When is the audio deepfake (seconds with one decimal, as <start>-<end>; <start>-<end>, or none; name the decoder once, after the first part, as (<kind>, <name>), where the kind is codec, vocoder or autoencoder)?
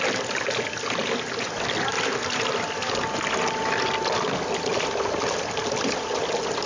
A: none